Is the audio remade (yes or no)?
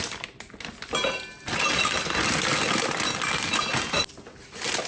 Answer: no